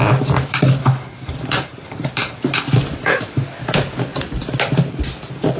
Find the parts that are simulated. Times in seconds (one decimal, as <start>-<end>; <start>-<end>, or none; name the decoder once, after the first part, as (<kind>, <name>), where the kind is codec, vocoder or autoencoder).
0.8-2.6 (vocoder, BigVGAN v2)